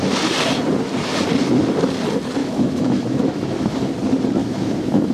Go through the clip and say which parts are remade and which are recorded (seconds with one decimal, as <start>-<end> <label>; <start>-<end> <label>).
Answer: 0.0-2.4 recorded; 2.4-3.9 remade; 3.9-4.4 recorded; 4.4-5.1 remade